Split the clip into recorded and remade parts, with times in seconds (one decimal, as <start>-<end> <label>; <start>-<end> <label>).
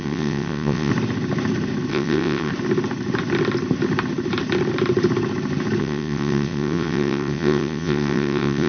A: 0.0-0.9 remade; 0.9-1.9 recorded; 1.9-2.5 remade; 2.5-5.8 recorded; 5.8-8.7 remade